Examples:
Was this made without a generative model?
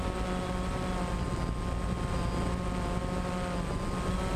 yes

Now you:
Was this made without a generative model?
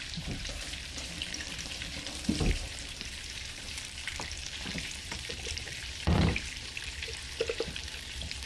no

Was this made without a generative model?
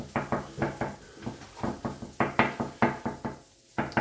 yes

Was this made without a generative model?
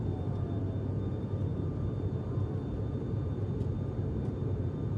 no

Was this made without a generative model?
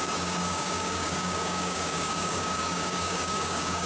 no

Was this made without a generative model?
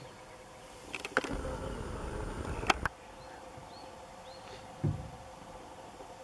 yes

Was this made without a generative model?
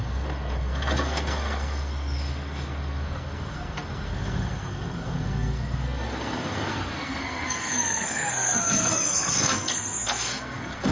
no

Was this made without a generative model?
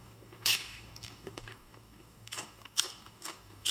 no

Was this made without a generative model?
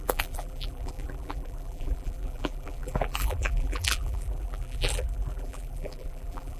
no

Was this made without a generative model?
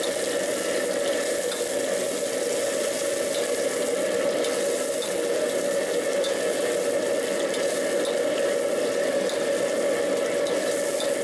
yes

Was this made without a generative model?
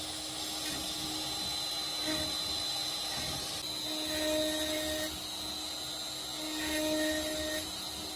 yes